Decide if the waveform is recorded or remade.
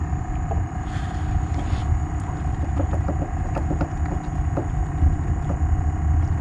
recorded